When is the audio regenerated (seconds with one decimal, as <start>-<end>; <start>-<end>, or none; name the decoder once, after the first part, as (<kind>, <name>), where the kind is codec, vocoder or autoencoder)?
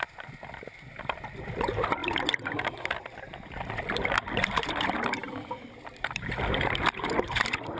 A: 0.0-5.2 (vocoder, BigVGAN v2); 6.0-7.8